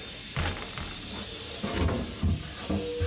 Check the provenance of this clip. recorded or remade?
recorded